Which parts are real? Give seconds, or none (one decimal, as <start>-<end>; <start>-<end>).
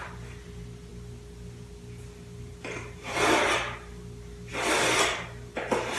0.0-6.0